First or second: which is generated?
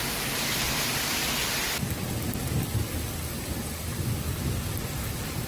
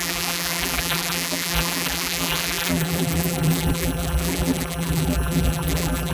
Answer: second